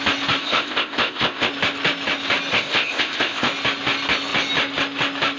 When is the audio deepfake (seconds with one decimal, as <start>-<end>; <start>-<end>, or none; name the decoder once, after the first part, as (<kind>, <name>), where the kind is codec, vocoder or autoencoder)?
0.4-1.5 (codec, ZipCodec); 2.5-3.5